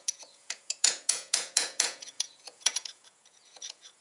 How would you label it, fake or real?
fake